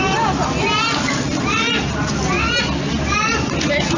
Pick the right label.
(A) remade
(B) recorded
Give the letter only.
B